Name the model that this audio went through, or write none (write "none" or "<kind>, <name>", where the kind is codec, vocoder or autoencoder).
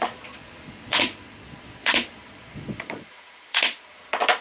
vocoder, Vocos